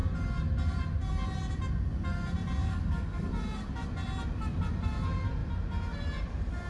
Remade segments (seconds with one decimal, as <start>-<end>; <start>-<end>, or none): 2.6-3.3

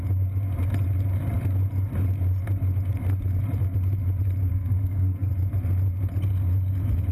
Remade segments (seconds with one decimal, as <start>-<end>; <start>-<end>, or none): 4.5-5.3

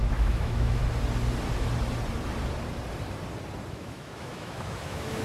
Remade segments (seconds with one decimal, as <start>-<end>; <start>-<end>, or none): 0.0-0.8; 3.7-5.2

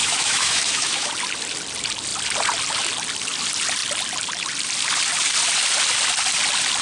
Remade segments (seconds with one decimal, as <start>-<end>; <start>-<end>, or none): 0.0-1.1

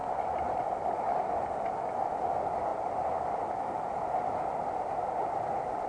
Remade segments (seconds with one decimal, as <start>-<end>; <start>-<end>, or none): 0.0-1.3

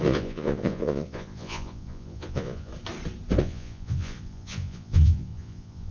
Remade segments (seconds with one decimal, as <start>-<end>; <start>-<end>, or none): 0.0-2.7; 3.4-5.9

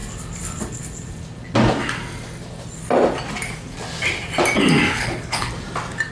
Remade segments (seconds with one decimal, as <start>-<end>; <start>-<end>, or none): 4.9-5.5

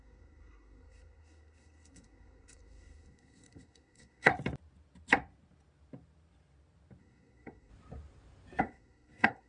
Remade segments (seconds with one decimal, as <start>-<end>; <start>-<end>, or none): 0.0-4.3; 7.0-7.7; 8.6-9.5